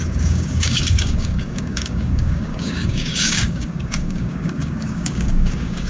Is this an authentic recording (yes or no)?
no